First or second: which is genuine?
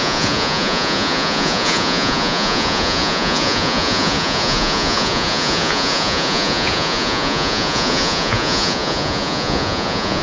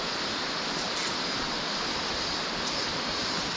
second